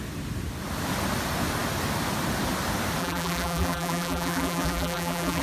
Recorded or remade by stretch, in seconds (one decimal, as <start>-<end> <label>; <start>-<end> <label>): 0.0-3.0 recorded; 3.0-5.4 remade

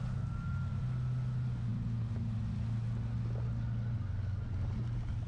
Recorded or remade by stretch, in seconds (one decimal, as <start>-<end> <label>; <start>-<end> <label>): 0.0-5.3 recorded

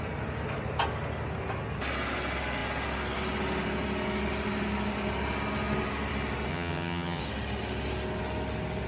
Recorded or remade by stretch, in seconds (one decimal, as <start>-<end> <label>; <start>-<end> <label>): 0.0-6.5 recorded; 6.5-7.2 remade; 7.2-8.9 recorded

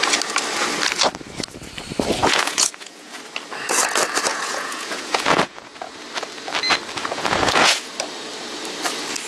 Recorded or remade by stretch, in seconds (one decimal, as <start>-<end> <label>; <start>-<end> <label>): 0.0-2.2 recorded; 2.2-3.2 remade; 3.2-4.3 recorded; 4.3-6.0 remade; 6.0-7.0 recorded; 7.0-7.9 remade; 7.9-9.3 recorded

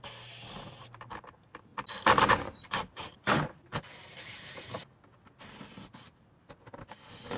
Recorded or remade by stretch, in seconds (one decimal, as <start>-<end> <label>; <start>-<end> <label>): 0.0-1.7 remade; 1.7-2.3 recorded; 2.3-4.8 remade; 4.8-5.9 recorded; 5.9-7.4 remade